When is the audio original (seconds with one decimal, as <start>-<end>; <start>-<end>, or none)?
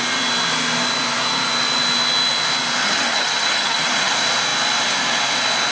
0.0-2.8; 4.1-5.7